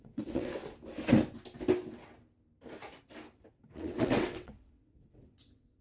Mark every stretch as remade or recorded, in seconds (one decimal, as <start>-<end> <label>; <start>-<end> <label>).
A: 0.0-0.6 remade; 0.6-3.5 recorded; 3.5-5.8 remade